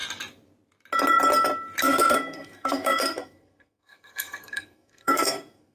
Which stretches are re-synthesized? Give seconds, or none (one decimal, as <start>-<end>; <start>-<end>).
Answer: 1.8-5.7